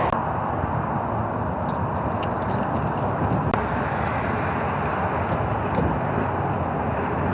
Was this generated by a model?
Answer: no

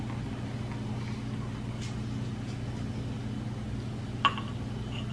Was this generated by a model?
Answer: no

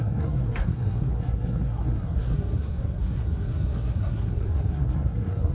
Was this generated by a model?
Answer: yes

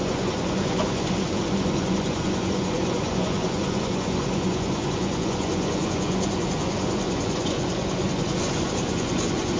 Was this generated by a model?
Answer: yes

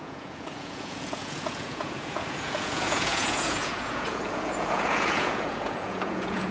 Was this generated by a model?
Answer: yes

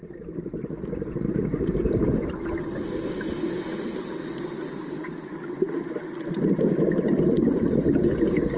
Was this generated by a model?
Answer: no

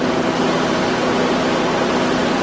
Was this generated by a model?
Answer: no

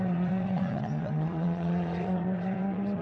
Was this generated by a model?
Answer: yes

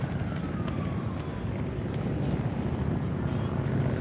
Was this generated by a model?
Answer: no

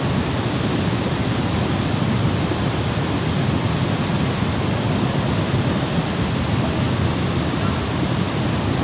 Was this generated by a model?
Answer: no